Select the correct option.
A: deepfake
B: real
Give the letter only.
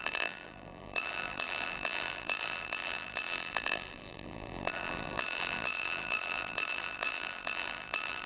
A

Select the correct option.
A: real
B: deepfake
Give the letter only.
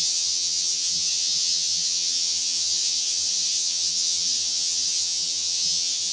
B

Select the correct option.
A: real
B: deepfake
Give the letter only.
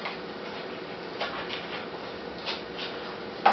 A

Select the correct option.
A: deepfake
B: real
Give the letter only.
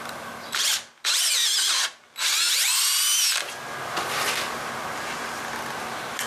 B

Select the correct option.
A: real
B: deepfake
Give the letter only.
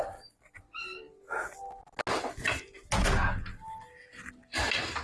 A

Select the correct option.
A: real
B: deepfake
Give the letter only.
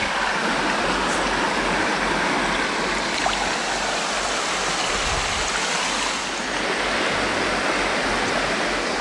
A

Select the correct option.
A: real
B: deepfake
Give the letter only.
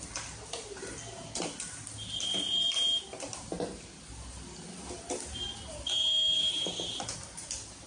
A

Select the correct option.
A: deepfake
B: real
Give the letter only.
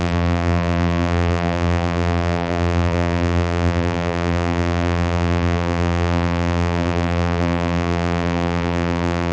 A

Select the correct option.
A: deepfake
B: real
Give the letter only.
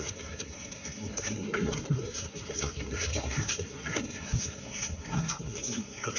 A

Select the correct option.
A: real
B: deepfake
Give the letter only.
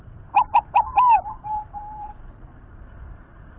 B